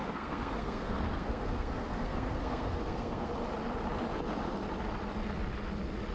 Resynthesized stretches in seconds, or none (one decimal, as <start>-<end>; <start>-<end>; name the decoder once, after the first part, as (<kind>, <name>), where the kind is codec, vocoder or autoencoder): 0.0-3.3 (codec, SNAC)